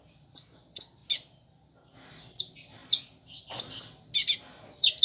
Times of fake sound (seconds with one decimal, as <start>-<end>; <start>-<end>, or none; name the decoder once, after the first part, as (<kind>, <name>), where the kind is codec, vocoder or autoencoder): none

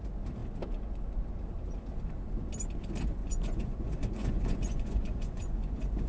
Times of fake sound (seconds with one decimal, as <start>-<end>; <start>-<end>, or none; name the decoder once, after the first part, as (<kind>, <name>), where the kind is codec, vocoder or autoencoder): 3.2-6.1 (vocoder, Vocos)

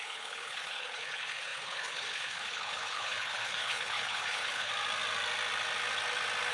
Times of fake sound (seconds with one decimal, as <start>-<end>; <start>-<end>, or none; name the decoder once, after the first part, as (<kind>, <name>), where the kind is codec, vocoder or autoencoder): 0.0-4.7 (codec, HILCodec)

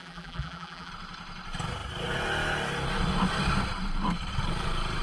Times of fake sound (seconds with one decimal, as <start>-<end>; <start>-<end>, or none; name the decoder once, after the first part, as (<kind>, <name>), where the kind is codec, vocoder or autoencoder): 0.0-0.9 (vocoder, BigVGAN v2)

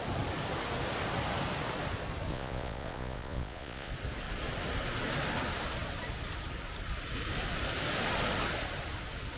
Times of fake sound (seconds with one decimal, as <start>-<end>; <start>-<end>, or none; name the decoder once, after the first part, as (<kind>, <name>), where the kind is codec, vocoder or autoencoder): 2.3-3.9 (vocoder, Vocos)

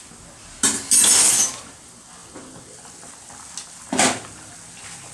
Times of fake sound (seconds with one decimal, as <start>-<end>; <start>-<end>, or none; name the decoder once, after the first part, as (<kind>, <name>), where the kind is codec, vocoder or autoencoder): none

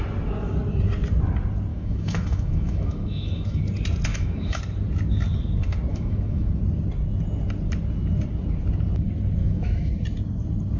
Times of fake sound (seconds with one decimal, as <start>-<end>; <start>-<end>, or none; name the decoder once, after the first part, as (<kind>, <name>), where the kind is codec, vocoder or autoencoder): 1.7-3.6 (autoencoder, DAC-VAE); 4.1-4.6; 5.9-6.5; 9.4-9.9